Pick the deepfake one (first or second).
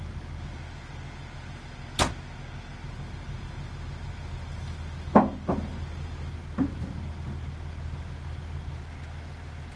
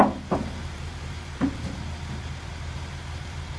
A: second